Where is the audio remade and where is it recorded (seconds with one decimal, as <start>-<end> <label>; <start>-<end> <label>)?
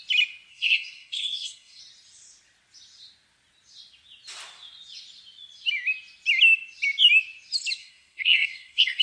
0.0-0.5 recorded; 0.5-1.8 remade; 1.8-7.8 recorded; 7.8-9.0 remade